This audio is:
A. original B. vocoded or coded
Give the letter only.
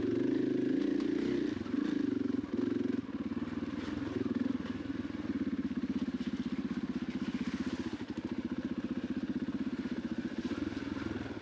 A